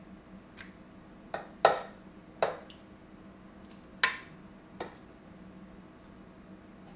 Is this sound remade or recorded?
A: recorded